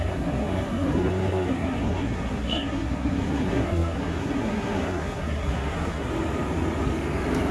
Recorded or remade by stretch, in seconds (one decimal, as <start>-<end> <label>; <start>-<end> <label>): 0.0-6.1 remade; 6.1-7.5 recorded